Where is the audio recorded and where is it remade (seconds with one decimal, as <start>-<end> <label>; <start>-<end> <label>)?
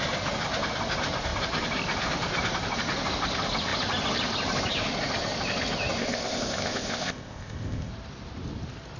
0.0-6.0 recorded; 6.0-7.9 remade; 7.9-9.0 recorded